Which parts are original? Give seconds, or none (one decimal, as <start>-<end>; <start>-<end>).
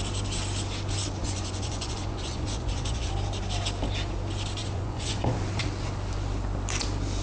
0.0-1.2; 3.1-4.6; 5.2-7.2